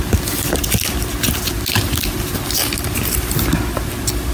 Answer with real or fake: real